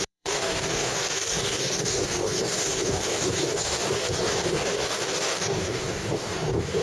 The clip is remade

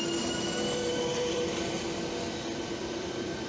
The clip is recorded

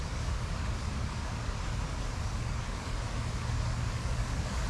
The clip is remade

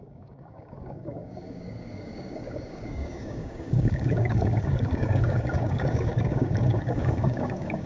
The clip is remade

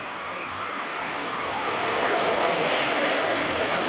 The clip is remade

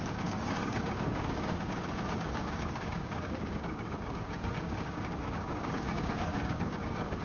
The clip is remade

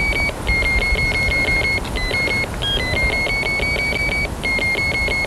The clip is recorded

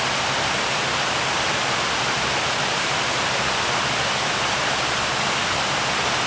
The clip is recorded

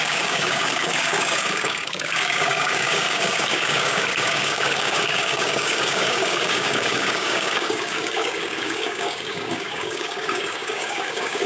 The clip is remade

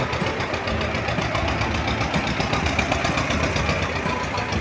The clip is recorded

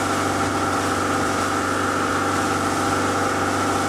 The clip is recorded